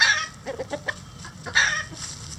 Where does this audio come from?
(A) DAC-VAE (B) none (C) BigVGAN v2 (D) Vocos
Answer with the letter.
B